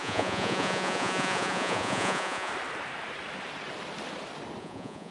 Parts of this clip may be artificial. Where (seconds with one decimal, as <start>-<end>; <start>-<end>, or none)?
0.0-2.5; 4.6-5.1